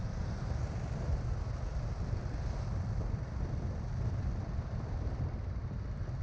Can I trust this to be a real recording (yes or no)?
yes